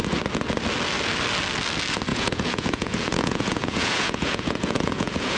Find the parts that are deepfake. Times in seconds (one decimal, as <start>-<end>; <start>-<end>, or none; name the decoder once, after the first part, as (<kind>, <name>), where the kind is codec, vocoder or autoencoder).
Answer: 2.1-5.4 (vocoder, Vocos)